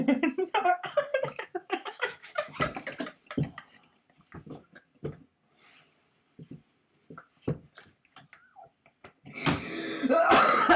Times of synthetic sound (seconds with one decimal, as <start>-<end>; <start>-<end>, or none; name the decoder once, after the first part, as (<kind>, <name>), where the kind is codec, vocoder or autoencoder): 1.1-2.6 (autoencoder, DAC-VAE)